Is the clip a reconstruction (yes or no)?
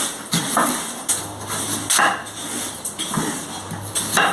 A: no